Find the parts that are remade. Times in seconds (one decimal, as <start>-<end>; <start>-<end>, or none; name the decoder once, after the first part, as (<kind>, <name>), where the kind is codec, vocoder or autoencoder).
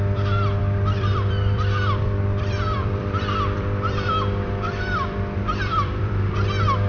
0.0-6.9 (vocoder, BigVGAN v2)